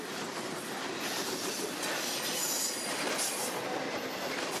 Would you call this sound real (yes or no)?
no